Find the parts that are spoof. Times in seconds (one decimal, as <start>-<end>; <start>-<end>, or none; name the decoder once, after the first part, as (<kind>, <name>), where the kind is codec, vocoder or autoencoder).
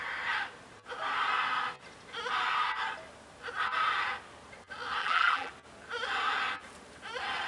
5.0-5.5 (vocoder, BigVGAN v2)